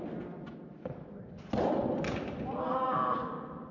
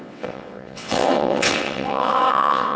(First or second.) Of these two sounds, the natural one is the first